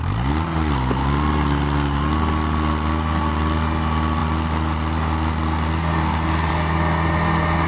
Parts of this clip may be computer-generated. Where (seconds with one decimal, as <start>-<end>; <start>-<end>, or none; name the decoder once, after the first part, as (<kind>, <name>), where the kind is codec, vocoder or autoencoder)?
none